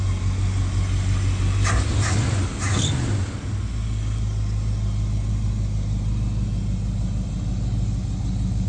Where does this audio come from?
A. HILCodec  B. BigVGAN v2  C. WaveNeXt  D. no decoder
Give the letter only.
D